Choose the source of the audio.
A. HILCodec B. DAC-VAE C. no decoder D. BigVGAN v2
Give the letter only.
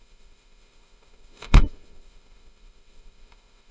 B